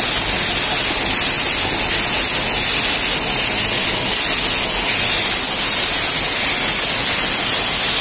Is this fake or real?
real